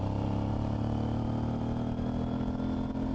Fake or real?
real